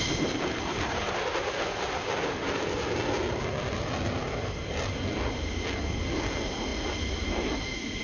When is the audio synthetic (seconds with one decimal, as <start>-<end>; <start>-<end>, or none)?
none